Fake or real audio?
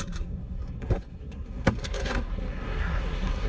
fake